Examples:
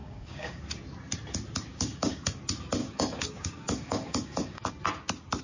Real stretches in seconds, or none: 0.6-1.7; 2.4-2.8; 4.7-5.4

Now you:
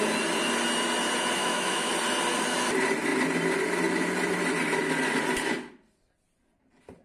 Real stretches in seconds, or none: 0.0-1.4; 1.9-7.0

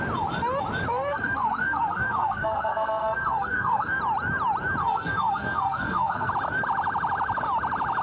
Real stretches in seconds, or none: 0.0-0.9; 4.0-4.8; 6.3-8.0

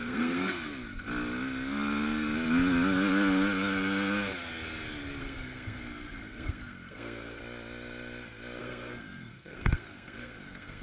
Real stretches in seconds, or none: 0.7-5.2; 7.4-8.6

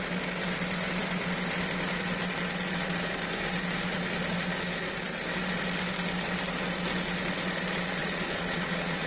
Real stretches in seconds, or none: 0.0-8.0